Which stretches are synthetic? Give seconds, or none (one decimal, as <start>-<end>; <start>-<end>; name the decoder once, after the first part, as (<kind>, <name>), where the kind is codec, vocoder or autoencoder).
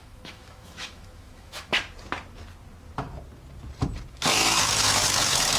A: 0.0-1.7 (autoencoder, DAC-VAE); 4.1-5.6